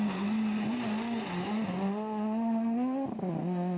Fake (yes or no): no